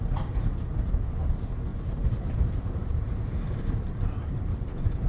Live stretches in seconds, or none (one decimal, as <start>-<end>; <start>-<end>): 0.0-1.7